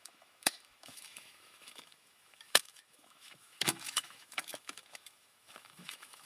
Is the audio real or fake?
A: fake